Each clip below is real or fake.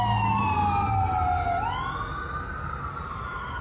real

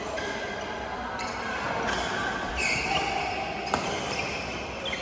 real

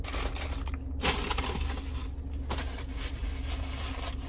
real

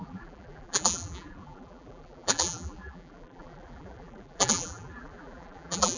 fake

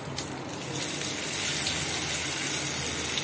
real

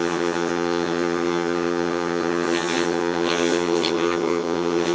fake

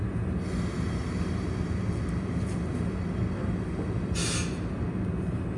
real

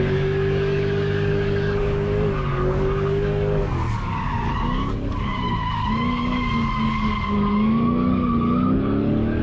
fake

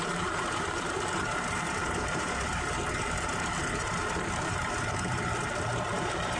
fake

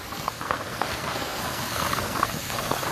fake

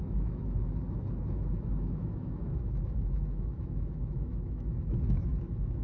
fake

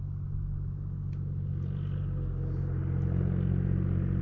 real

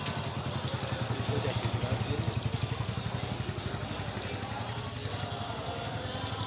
real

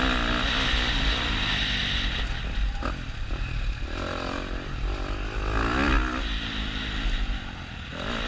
real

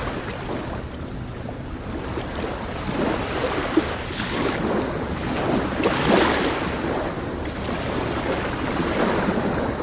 real